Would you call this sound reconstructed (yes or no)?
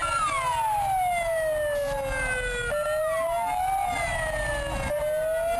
no